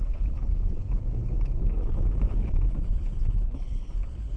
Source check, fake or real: fake